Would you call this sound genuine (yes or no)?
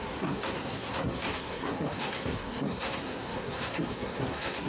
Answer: no